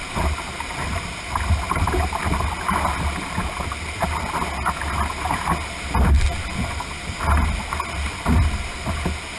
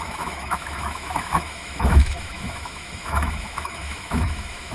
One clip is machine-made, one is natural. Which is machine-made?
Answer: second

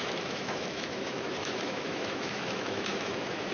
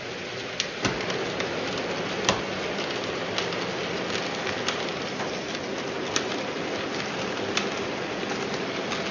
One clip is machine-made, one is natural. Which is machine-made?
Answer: first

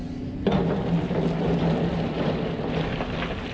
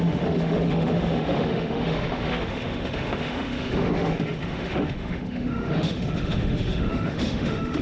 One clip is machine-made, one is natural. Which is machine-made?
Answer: second